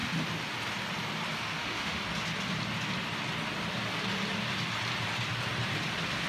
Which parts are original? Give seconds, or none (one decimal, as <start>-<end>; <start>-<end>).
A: 0.0-1.4; 2.0-6.3